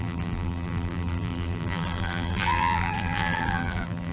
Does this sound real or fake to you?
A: fake